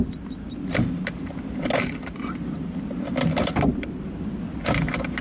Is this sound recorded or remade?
recorded